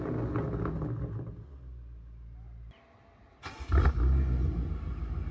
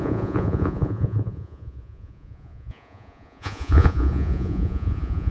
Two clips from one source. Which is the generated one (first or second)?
second